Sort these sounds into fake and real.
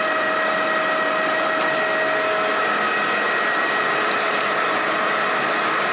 real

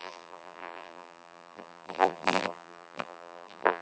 fake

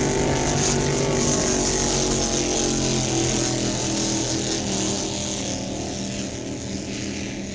real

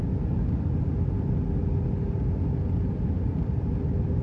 real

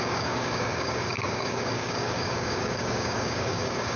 fake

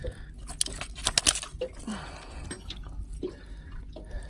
real